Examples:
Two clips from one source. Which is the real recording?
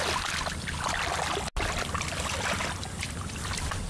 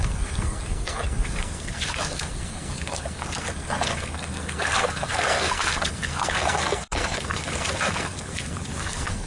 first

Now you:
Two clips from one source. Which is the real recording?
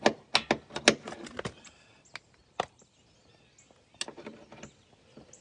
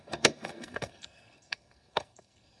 first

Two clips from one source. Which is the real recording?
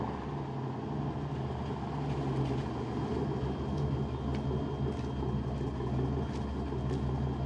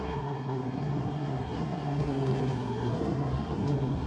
first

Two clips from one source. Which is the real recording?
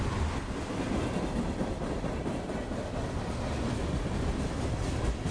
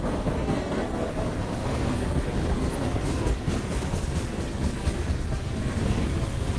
first